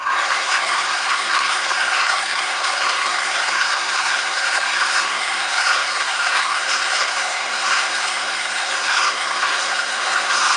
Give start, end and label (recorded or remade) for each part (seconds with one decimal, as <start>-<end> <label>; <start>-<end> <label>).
0.0-10.6 remade